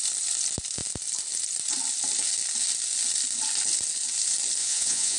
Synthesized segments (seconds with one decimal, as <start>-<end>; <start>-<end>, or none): 4.6-5.2